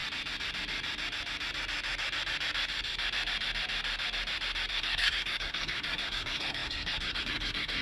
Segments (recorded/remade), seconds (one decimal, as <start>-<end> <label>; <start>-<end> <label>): 0.0-4.7 recorded; 4.7-7.8 remade